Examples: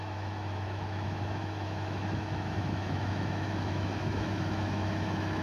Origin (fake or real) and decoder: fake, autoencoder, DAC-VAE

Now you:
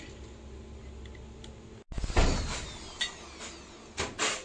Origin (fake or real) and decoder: real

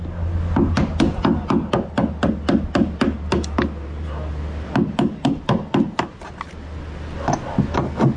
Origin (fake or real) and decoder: real